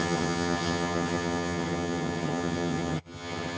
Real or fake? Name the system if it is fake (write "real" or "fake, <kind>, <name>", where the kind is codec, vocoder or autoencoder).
fake, vocoder, HiFi-GAN